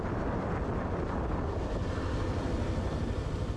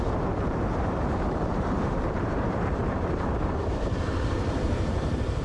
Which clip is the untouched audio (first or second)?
first